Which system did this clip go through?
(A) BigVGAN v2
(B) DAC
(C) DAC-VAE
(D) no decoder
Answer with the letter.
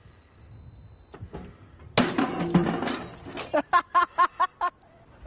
D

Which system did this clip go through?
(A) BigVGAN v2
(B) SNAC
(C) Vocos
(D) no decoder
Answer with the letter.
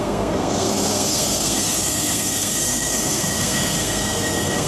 B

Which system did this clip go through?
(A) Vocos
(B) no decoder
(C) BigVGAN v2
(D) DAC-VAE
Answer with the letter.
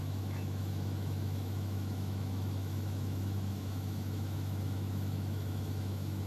D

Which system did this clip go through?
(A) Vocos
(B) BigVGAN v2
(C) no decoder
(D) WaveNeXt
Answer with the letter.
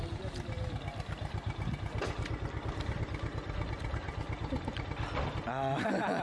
C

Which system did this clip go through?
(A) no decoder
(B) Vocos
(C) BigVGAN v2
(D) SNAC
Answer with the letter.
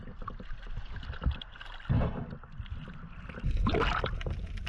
A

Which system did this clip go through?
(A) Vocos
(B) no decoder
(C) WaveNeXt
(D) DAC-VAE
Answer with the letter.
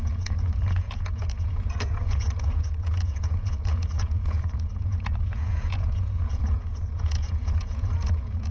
A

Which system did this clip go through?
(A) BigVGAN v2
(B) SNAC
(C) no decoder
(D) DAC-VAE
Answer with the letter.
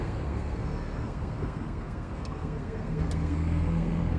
B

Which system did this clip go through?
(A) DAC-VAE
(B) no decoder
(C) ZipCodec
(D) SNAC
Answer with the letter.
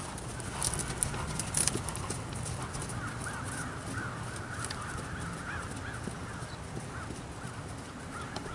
B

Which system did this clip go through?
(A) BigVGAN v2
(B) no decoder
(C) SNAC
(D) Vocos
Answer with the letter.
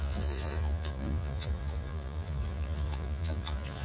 D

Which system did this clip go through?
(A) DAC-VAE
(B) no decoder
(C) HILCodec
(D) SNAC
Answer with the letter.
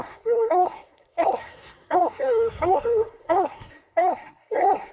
D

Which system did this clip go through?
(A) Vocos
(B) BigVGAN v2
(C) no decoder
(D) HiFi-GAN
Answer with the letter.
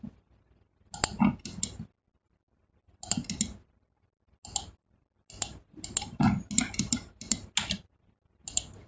C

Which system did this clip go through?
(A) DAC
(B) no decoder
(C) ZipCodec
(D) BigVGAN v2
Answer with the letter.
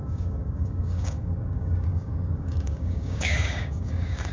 A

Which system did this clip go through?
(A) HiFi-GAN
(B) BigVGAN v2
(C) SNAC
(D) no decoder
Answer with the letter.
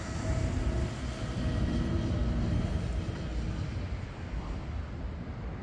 D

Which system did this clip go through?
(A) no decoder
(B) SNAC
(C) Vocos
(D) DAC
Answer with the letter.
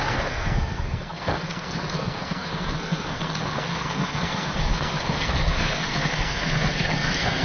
B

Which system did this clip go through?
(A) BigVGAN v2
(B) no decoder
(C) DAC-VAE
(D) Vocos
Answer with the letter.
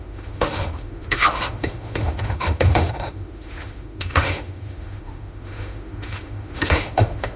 C